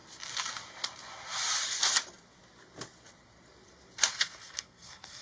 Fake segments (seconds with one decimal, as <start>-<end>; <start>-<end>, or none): 4.1-5.2